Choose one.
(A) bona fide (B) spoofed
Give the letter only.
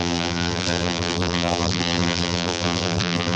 B